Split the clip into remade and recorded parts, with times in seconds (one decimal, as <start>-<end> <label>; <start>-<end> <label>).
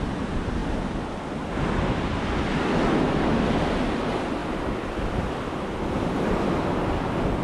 0.0-7.4 recorded